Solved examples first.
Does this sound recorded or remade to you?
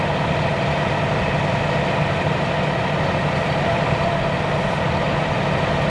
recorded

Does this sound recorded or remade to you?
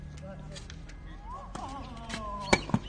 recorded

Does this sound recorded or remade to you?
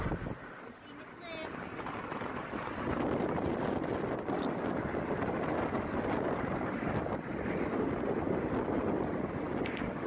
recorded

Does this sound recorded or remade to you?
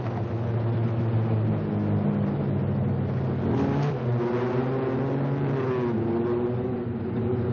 recorded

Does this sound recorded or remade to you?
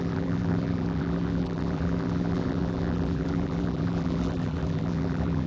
remade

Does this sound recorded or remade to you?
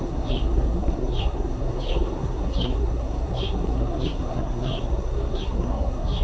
remade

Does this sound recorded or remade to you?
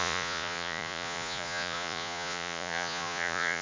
remade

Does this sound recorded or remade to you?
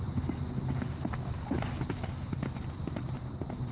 recorded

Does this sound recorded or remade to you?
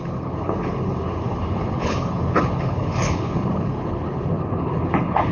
remade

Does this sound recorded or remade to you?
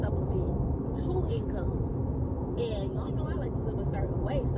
recorded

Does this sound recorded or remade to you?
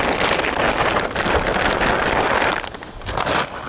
recorded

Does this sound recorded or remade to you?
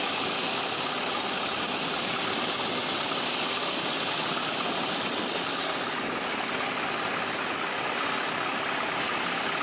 recorded